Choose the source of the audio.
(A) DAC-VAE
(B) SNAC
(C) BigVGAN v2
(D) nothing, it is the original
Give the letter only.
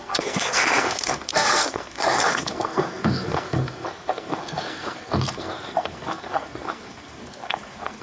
B